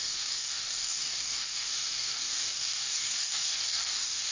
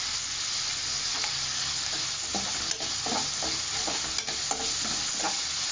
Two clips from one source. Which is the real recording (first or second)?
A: second